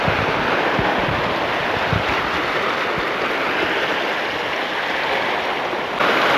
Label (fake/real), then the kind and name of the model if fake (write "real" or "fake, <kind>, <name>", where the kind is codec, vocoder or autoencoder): real